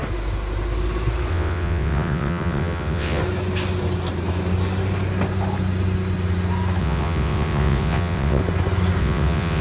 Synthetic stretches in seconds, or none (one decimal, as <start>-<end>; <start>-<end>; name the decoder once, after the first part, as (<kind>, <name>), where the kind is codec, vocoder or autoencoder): 1.3-3.2 (vocoder, WaveNeXt); 6.8-8.4; 9.0-9.6

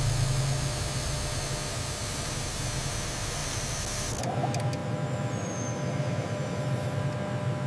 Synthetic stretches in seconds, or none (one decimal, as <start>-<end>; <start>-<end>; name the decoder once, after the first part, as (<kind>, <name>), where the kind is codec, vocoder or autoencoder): none

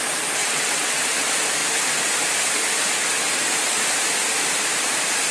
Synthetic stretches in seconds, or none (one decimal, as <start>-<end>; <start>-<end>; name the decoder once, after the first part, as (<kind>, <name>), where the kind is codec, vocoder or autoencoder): 0.4-1.0 (vocoder, WaveNeXt)